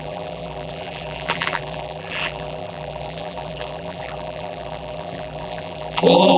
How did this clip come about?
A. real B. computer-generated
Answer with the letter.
B